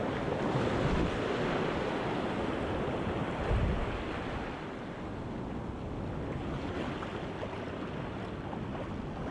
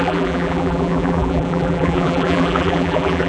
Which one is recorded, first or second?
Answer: first